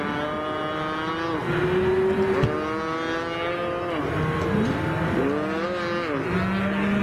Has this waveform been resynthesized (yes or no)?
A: no